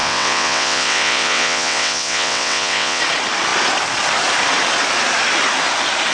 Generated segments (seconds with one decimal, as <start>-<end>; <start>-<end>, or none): 0.0-3.0